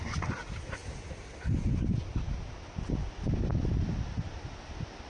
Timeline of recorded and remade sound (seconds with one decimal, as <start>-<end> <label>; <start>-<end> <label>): 0.0-5.1 recorded